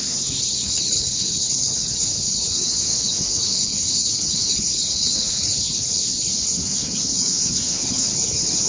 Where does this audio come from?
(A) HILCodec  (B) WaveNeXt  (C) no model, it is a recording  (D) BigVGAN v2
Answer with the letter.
A